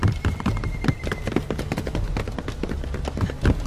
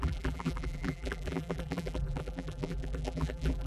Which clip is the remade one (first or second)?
second